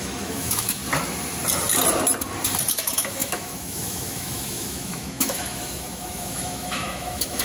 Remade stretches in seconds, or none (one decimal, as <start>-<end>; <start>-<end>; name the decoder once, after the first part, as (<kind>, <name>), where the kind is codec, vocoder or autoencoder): 0.0-0.8 (autoencoder, DAC-VAE); 2.7-7.4